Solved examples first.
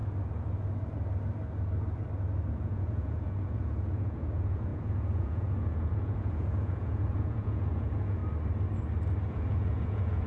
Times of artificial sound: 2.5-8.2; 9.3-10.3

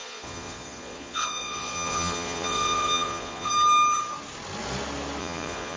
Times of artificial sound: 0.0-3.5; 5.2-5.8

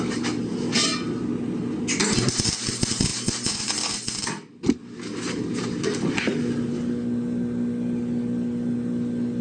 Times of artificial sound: none